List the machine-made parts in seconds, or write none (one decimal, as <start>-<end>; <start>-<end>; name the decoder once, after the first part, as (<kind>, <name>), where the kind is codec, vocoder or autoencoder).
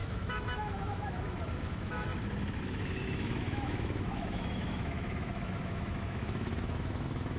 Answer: 0.0-2.1 (autoencoder, DAC-VAE); 2.6-7.4